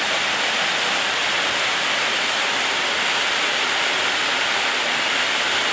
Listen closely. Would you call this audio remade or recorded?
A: recorded